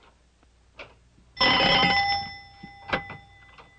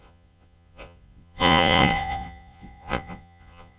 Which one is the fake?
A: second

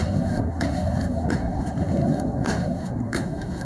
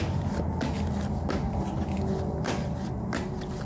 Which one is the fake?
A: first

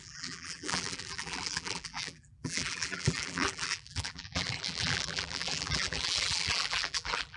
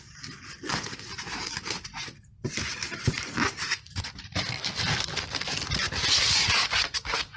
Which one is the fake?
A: first